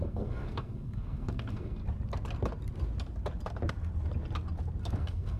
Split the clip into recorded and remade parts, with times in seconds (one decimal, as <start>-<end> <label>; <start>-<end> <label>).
0.0-1.8 remade; 1.8-4.8 recorded; 4.8-5.4 remade